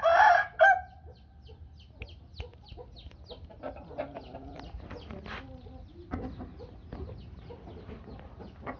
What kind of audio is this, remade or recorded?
recorded